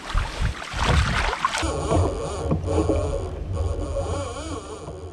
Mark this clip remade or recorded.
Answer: recorded